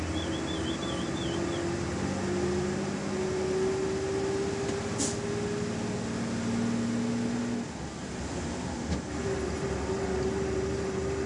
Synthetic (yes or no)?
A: no